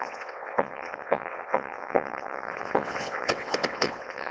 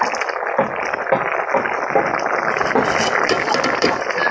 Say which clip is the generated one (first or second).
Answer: first